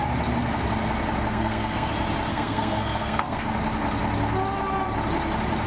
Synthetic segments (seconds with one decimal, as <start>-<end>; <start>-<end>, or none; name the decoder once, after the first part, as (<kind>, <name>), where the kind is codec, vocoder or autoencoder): 1.3-1.9 (codec, SNAC); 2.3-3.4